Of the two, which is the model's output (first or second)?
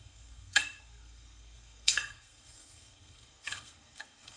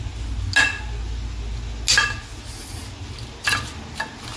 first